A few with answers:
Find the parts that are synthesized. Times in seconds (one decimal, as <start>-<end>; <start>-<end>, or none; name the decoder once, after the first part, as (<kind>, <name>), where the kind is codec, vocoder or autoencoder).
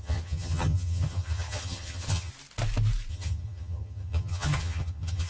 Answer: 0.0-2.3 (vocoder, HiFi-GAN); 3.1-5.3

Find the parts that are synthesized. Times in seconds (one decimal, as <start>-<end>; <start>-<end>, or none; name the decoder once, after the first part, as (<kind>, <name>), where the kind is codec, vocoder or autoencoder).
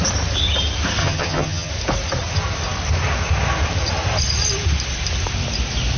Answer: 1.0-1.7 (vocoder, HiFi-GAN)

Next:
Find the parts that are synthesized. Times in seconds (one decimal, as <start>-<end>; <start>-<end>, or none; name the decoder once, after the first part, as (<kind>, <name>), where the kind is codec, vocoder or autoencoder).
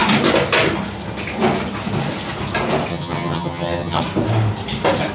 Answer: 2.9-4.0 (vocoder, HiFi-GAN)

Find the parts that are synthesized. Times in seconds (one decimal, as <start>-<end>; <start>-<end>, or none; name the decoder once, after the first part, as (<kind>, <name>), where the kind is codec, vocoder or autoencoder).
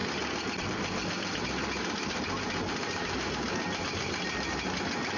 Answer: none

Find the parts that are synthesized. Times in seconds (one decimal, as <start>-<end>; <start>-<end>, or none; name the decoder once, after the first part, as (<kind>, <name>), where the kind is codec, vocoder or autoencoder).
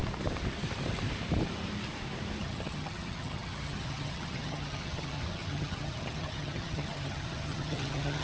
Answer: 2.4-8.2 (vocoder, HiFi-GAN)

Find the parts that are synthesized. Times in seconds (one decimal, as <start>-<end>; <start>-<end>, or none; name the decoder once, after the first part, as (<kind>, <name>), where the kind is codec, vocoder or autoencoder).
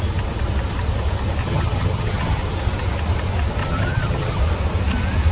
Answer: 1.4-2.4 (vocoder, HiFi-GAN); 3.6-4.4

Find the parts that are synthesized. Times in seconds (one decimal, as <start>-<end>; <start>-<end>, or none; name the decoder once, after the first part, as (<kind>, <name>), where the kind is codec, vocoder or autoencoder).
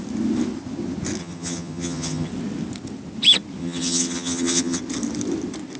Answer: 1.2-2.3 (vocoder, HiFi-GAN); 3.6-4.8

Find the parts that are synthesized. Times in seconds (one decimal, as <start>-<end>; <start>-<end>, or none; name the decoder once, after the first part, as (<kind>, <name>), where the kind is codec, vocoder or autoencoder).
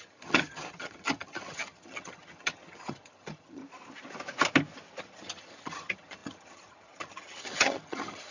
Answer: 0.0-3.6 (vocoder, HiFi-GAN); 5.0-8.3